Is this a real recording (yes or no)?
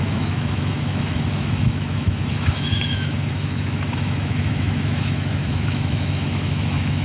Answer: no